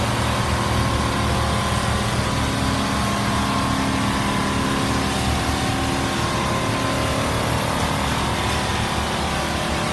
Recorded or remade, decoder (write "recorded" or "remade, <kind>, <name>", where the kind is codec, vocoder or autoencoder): recorded